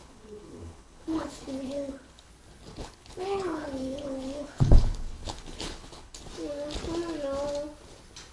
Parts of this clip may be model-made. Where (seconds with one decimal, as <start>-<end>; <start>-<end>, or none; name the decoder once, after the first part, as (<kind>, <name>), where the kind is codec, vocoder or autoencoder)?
0.0-2.3 (codec, HILCodec); 2.7-6.2